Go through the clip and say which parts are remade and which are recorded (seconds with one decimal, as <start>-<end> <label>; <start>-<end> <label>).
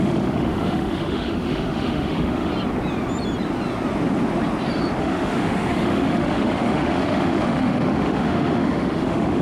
0.0-2.5 remade; 2.5-5.0 recorded; 5.0-9.4 remade